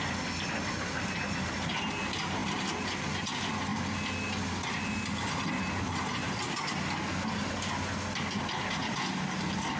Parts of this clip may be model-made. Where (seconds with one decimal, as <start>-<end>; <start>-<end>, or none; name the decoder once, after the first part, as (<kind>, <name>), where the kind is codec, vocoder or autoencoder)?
none